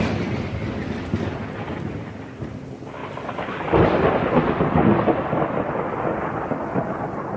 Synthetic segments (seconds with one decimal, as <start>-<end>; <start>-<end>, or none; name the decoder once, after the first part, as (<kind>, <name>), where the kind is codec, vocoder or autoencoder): none